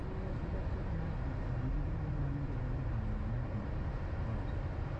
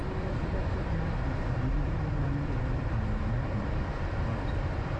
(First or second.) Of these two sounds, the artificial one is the second